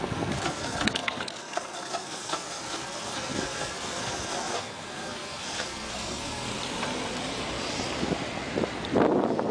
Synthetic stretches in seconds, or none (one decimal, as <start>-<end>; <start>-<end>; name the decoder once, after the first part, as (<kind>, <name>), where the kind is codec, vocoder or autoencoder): 0.0-6.5 (codec, SNAC)